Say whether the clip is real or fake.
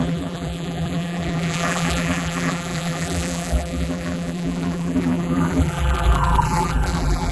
fake